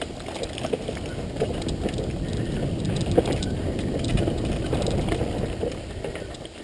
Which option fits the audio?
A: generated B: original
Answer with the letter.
B